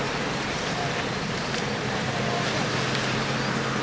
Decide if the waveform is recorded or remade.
remade